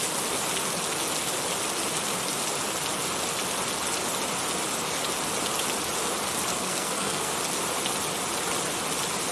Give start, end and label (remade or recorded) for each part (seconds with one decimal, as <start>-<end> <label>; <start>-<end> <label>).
0.0-6.5 recorded; 6.5-7.3 remade; 7.3-9.3 recorded